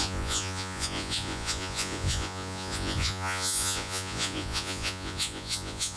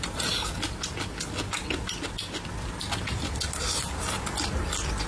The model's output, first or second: first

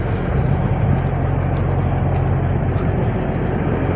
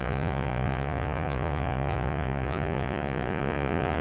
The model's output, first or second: second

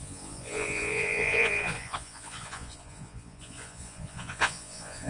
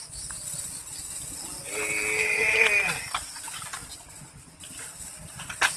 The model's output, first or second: first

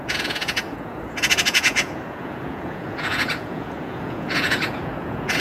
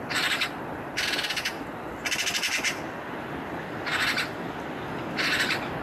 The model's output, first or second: first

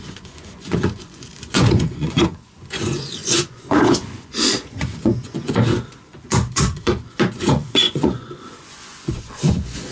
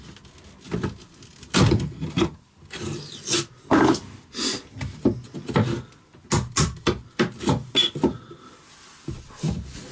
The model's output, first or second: first